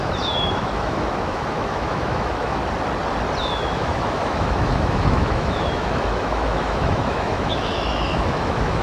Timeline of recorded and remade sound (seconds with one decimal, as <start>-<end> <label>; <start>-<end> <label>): 0.0-2.6 remade; 2.6-3.4 recorded; 3.4-8.8 remade